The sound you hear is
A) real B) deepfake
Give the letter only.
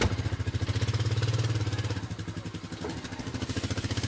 A